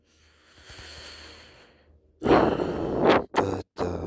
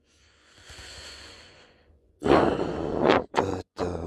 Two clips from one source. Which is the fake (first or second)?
second